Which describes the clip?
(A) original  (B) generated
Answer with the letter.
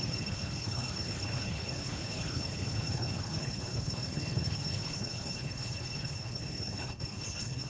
B